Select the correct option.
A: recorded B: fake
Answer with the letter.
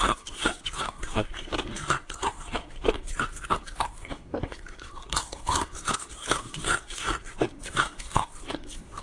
B